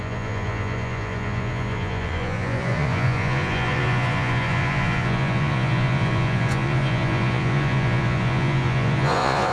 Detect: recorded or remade remade